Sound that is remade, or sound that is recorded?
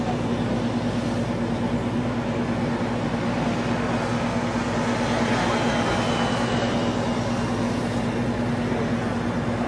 recorded